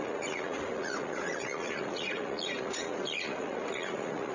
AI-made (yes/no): yes